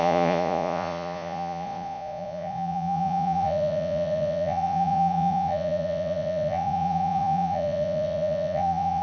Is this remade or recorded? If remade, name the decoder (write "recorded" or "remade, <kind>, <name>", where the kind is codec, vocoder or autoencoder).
remade, vocoder, Vocos